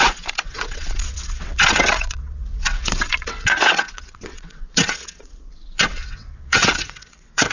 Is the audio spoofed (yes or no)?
yes